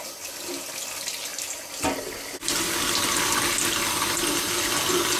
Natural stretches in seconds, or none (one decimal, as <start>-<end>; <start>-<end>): 0.0-5.2

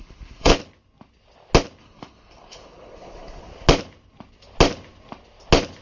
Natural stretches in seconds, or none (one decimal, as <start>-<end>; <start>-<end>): 0.5-1.8; 3.5-5.8

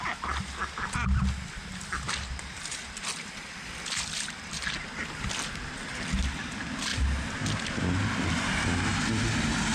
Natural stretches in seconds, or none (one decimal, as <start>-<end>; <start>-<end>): 0.0-9.7

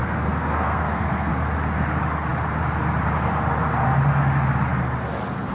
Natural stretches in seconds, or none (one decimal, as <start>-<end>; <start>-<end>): 1.3-5.5

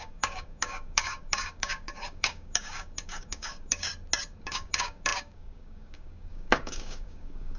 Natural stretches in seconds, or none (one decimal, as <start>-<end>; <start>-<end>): 3.9-4.4

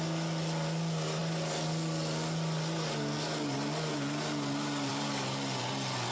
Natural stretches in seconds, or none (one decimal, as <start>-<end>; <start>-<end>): 0.0-6.1

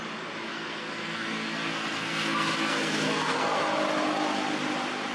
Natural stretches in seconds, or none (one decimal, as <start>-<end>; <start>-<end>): 0.0-0.5; 3.6-5.1